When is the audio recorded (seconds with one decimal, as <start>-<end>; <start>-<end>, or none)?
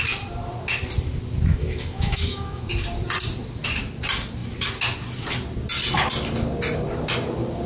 0.0-1.5; 2.7-7.7